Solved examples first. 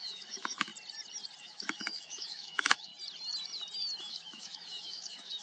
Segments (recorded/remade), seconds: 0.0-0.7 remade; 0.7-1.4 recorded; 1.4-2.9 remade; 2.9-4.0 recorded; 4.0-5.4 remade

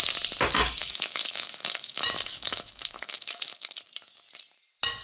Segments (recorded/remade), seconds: 0.0-0.8 recorded; 0.8-3.8 remade; 3.8-5.0 recorded